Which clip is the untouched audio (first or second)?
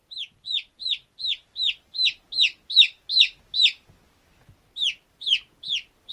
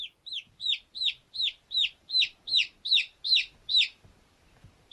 first